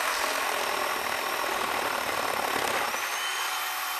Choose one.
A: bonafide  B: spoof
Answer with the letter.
B